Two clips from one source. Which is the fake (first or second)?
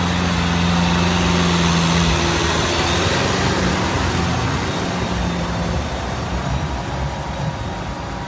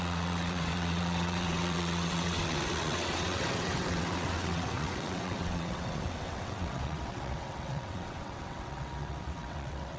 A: second